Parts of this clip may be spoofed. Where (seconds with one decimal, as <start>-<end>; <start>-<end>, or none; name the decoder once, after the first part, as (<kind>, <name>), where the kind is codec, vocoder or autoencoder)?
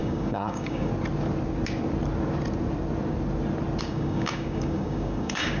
0.0-0.9 (codec, DAC); 3.8-5.6